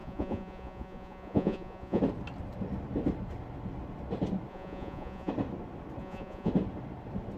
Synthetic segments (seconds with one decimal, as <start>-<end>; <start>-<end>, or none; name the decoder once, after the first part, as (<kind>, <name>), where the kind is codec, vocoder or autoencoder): 0.0-2.0 (vocoder, Vocos); 4.5-5.3; 6.0-6.5